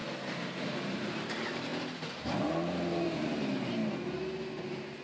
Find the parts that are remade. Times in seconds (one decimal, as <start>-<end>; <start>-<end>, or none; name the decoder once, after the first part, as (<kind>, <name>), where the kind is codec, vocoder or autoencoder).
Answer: 0.6-1.7 (vocoder, BigVGAN v2); 2.4-3.8; 4.6-5.0